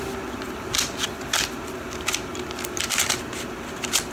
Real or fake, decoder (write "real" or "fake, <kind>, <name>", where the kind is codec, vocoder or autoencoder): real